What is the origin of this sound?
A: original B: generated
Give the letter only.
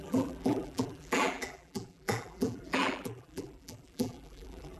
B